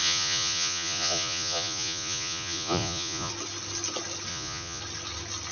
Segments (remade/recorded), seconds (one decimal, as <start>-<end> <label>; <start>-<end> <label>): 0.0-3.3 remade; 3.3-4.3 recorded; 4.3-4.8 remade; 4.8-5.5 recorded